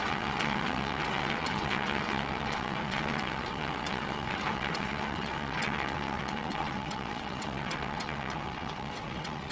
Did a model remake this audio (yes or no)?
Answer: yes